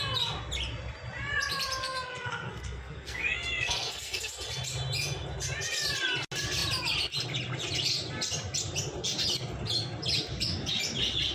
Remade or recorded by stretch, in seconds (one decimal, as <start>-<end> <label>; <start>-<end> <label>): 0.0-1.8 recorded; 1.8-4.3 remade; 4.3-11.3 recorded